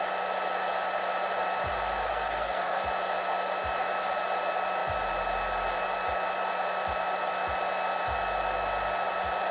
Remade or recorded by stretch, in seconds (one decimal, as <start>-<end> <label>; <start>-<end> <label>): 0.0-2.0 recorded; 2.0-2.8 remade; 2.8-9.5 recorded